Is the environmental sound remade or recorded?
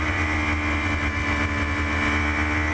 recorded